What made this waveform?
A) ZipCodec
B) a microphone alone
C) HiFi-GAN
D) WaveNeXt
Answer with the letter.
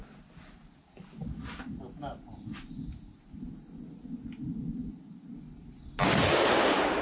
B